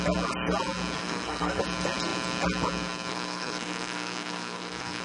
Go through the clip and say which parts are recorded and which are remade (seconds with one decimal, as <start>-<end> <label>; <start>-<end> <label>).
0.0-1.0 recorded; 1.0-1.6 remade; 1.6-3.1 recorded; 3.1-5.0 remade